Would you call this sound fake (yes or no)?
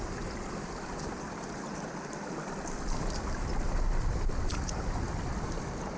no